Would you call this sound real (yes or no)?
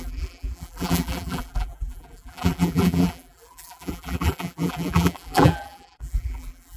no